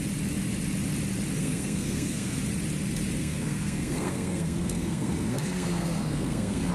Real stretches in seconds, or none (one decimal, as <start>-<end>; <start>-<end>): 0.0-1.4; 2.4-3.2